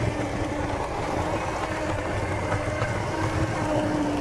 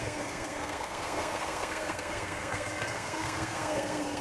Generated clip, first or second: second